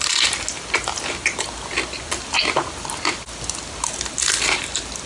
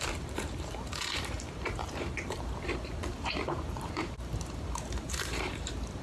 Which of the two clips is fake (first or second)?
second